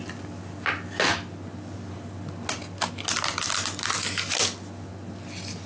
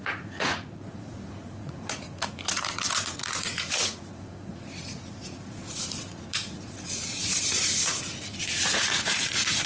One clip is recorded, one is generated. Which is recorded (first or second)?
first